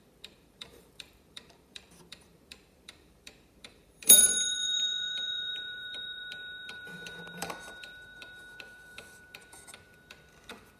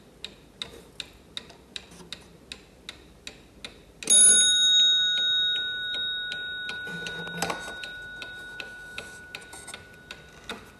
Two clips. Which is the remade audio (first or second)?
first